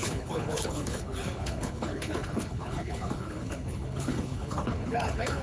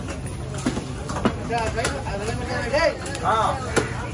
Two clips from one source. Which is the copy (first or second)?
first